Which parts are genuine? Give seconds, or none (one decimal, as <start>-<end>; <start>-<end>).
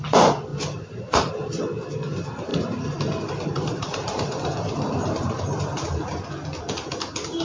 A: 0.0-0.5; 1.3-2.5; 6.3-7.4